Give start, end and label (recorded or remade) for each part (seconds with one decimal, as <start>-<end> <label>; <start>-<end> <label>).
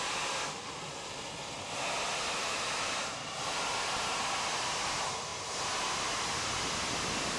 0.0-2.4 recorded; 2.4-2.9 remade; 2.9-7.4 recorded